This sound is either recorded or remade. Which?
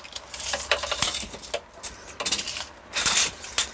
recorded